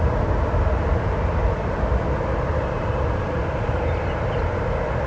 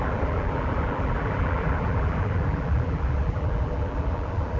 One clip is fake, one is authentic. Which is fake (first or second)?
second